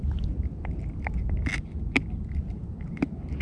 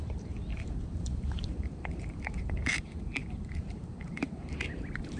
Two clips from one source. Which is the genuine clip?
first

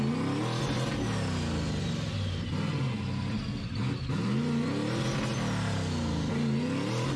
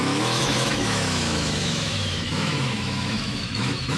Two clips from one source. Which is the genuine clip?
first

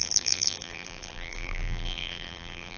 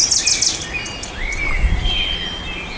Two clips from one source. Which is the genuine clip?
second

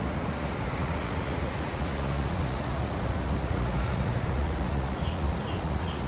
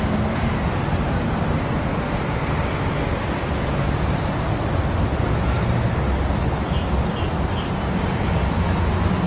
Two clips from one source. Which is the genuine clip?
second